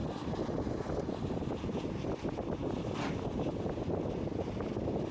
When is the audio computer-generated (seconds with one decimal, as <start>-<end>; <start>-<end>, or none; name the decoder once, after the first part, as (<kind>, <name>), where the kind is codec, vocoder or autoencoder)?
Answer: none